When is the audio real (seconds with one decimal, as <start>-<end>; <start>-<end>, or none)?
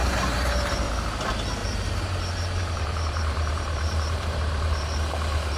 0.9-1.6; 5.0-5.6